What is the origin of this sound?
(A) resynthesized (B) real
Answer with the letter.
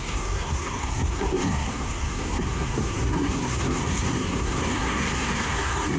A